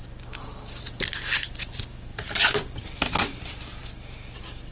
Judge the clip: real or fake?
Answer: real